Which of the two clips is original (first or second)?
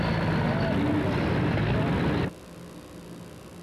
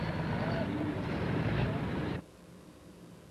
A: first